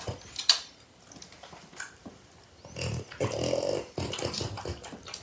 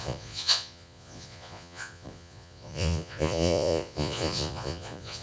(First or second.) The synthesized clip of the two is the second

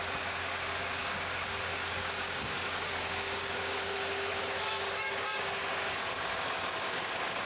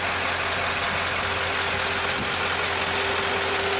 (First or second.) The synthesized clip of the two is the first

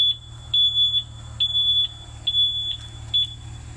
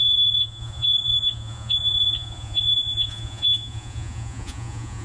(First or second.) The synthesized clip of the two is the second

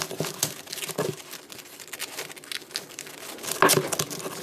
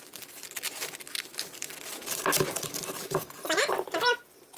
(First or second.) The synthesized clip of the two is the second